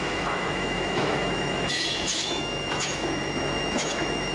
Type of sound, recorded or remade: remade